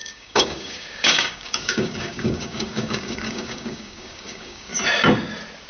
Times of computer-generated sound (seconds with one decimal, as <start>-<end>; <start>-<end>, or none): 0.0-4.7